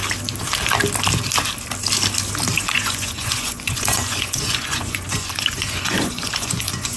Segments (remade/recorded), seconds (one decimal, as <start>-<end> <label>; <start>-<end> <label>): 0.0-2.6 recorded; 2.6-7.0 remade